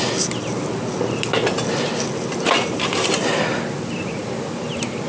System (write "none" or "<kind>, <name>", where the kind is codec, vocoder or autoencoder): none